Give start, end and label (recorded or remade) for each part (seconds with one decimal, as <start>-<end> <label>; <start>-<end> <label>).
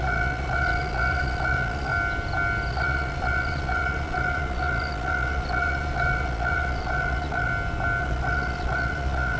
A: 0.0-1.9 remade; 1.9-2.7 recorded; 2.7-7.5 remade; 7.5-8.0 recorded; 8.0-9.4 remade